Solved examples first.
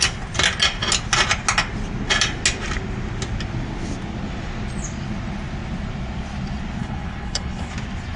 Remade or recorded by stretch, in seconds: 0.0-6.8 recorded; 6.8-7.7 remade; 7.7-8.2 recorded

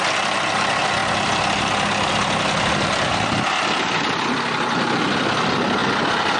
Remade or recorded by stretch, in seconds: 0.0-6.4 recorded